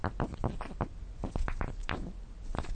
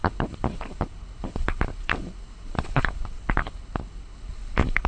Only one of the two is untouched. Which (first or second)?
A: first